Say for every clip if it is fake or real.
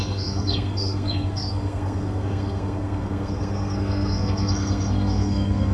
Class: fake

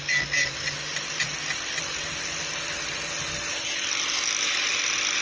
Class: real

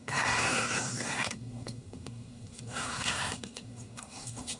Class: fake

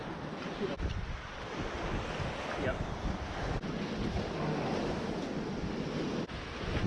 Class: real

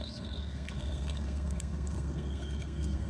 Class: fake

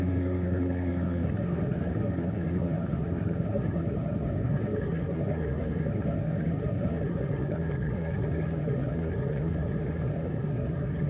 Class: fake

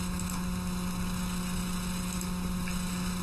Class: real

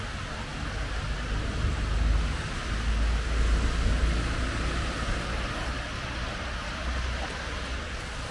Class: real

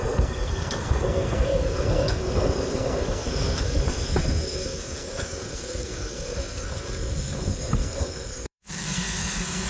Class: fake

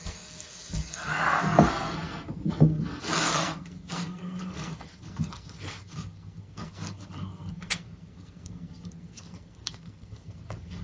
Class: fake